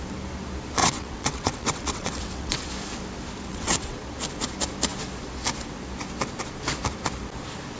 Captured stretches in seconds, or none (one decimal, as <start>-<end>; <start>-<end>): 0.0-0.8; 2.7-3.5; 4.0-7.8